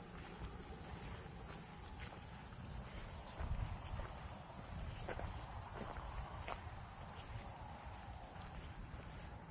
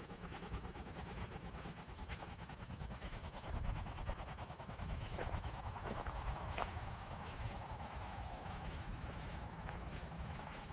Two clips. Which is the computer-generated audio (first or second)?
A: second